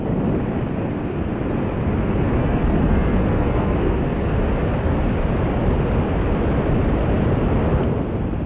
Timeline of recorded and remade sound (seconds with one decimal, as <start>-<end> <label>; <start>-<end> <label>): 0.0-2.4 recorded; 2.4-4.3 remade; 4.3-8.5 recorded